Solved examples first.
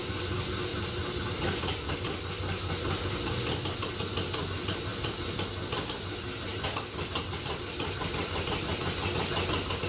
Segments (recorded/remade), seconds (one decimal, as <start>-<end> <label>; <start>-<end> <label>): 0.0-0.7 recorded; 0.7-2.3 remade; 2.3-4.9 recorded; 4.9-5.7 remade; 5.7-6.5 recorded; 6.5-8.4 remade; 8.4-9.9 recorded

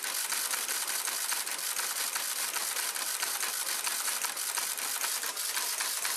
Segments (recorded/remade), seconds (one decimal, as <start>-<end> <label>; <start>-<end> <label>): 0.0-1.5 recorded; 1.5-2.2 remade; 2.2-2.6 recorded; 2.6-3.3 remade; 3.3-6.2 recorded

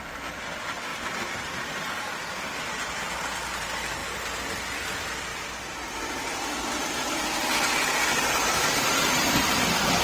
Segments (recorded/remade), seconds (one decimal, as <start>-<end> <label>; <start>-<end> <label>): 0.0-0.9 recorded; 0.9-1.7 remade; 1.7-5.3 recorded; 5.3-6.4 remade; 6.4-8.1 recorded; 8.1-9.6 remade; 9.6-10.0 recorded

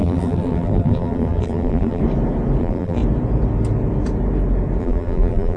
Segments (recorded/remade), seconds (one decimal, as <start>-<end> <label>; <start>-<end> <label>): 0.0-2.0 remade; 2.0-2.6 recorded; 2.6-3.0 remade; 3.0-4.8 recorded; 4.8-5.6 remade

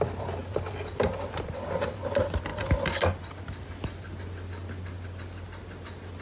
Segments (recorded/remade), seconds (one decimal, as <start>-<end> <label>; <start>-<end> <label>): 0.0-0.4 recorded; 0.4-2.1 remade; 2.1-2.5 recorded; 2.5-3.3 remade; 3.3-6.2 recorded